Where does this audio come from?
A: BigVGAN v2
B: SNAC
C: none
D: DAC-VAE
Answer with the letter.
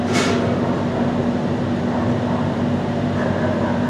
C